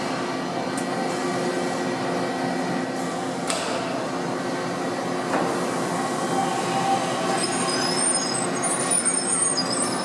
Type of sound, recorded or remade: recorded